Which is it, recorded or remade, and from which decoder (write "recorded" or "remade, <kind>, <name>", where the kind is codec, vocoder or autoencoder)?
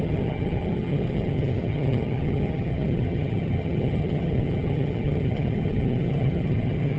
remade, vocoder, HiFi-GAN